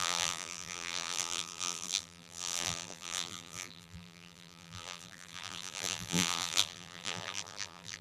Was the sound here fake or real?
fake